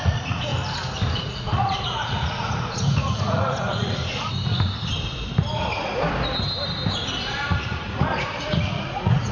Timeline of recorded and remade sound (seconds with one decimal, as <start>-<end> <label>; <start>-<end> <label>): 0.0-0.5 remade; 0.5-1.2 recorded; 1.2-4.1 remade; 4.1-7.2 recorded; 7.2-9.3 remade